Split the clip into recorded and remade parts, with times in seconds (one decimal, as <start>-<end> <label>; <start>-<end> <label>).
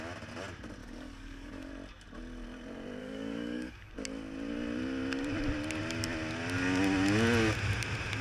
0.0-0.8 recorded; 0.8-1.7 remade; 1.7-3.0 recorded; 3.0-3.9 remade; 3.9-8.2 recorded